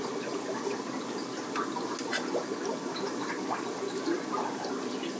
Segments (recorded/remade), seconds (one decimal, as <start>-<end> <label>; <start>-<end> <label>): 0.0-5.2 recorded